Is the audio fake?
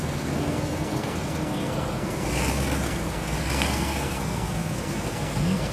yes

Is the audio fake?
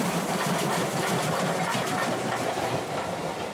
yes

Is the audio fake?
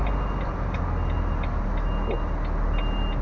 no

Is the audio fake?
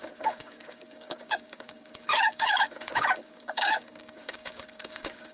yes